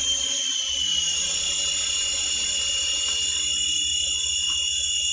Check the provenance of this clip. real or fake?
real